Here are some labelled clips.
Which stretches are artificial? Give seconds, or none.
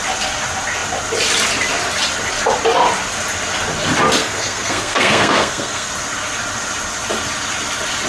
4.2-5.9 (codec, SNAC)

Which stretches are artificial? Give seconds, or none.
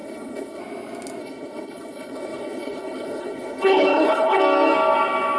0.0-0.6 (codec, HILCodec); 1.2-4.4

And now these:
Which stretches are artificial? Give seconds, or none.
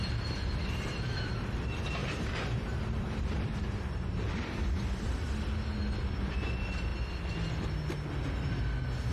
2.0-5.4 (vocoder, BigVGAN v2)